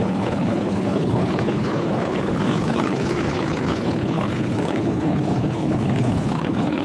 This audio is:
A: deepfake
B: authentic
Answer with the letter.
A